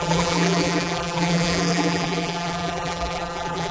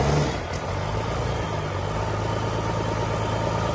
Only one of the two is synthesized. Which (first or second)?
first